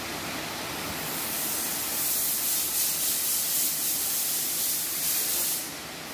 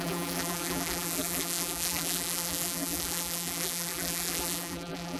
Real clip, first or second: first